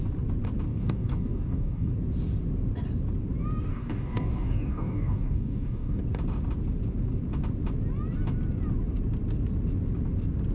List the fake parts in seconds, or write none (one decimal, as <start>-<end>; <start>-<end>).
0.7-1.9; 3.7-6.0